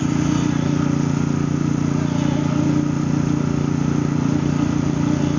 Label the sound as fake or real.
real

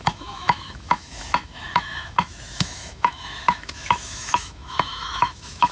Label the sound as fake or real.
fake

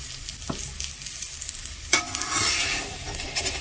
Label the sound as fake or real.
real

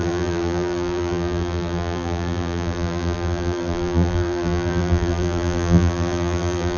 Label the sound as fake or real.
fake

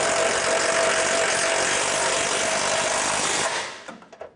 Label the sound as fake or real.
real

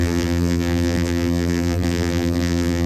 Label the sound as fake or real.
fake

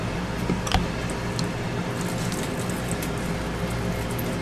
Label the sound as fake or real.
real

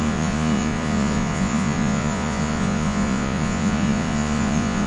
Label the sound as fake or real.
fake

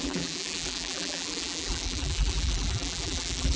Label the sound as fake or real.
fake